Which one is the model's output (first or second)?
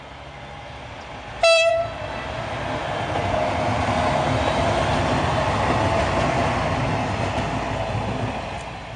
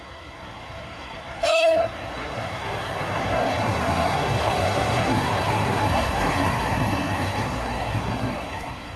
second